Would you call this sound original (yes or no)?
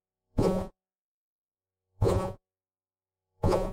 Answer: no